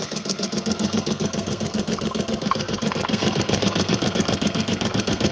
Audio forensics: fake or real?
fake